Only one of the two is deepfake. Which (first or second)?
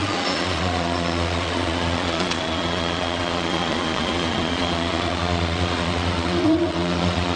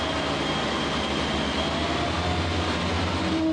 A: first